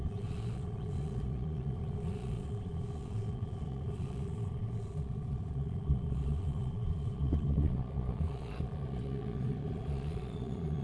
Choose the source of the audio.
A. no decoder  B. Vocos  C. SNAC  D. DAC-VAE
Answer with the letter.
B